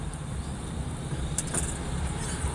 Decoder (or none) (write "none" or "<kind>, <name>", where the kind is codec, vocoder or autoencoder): none